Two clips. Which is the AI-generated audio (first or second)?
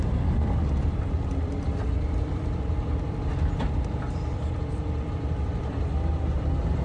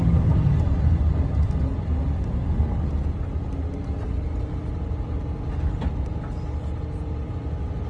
first